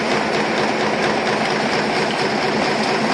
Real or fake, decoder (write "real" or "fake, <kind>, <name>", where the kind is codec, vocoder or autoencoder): real